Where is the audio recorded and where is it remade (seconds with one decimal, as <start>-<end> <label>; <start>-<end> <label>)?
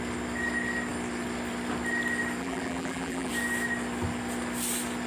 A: 0.0-2.4 recorded; 2.4-3.3 remade; 3.3-5.1 recorded